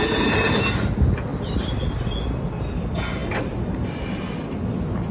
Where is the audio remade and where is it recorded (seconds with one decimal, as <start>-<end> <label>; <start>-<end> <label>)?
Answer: 0.0-5.1 recorded